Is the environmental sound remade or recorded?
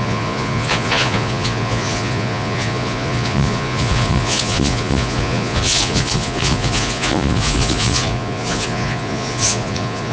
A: remade